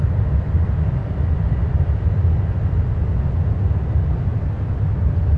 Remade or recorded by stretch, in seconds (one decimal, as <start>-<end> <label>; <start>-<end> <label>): 0.0-5.4 recorded